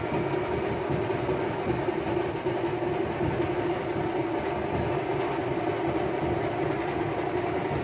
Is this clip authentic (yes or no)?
yes